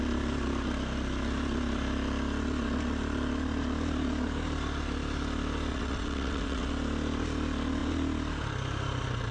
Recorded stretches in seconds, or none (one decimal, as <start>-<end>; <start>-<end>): 0.0-5.7; 6.7-9.3